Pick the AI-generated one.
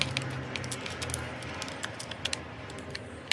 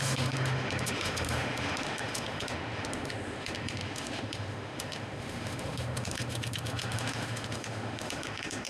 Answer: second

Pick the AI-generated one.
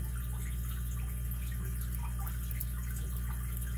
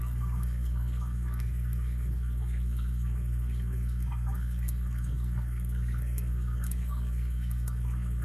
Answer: second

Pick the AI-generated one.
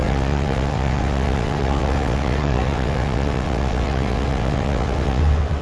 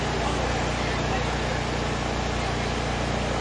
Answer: first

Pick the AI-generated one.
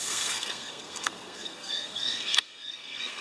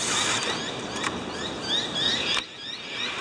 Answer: first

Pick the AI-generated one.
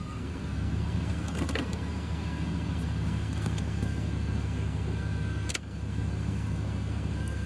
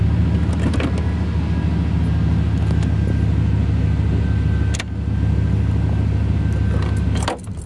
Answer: first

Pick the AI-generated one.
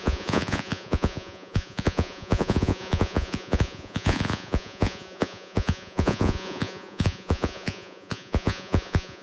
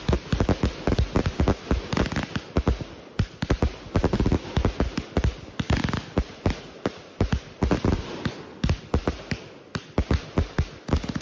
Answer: first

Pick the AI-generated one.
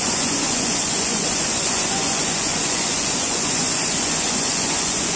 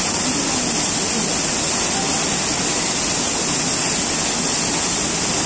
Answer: first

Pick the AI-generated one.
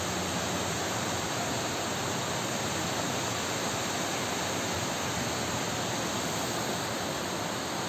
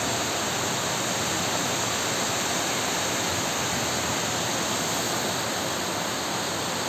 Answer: first